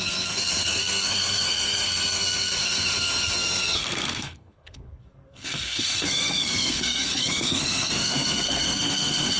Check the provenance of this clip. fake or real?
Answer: fake